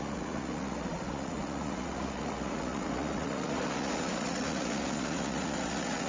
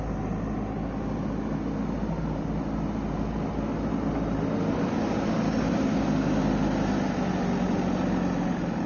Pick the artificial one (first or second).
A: first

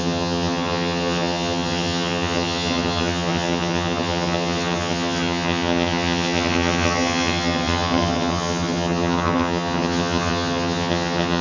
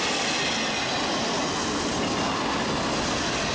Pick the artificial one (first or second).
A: first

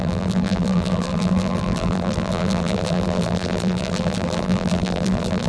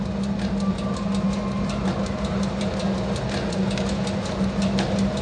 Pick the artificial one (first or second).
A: first